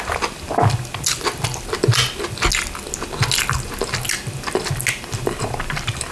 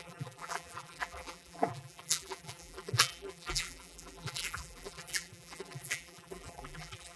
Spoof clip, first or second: second